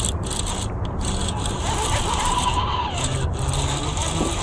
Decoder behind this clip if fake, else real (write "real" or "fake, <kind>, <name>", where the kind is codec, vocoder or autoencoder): real